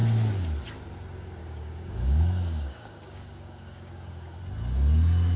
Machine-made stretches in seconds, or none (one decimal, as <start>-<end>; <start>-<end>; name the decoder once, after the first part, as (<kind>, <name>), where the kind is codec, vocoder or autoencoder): 1.4-4.4 (codec, DAC)